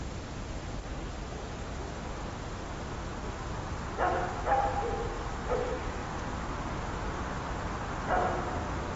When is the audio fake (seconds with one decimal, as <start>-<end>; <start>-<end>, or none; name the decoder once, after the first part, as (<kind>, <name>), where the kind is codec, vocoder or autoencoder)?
none